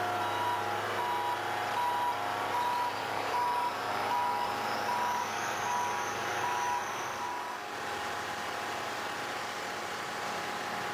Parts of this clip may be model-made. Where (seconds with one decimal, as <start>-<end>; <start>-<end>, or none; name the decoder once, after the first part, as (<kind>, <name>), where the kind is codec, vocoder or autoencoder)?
3.0-7.7 (codec, DAC)